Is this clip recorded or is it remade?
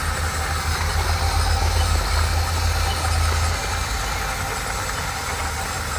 recorded